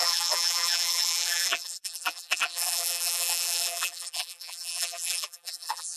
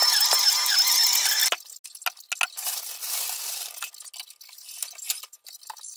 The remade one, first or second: first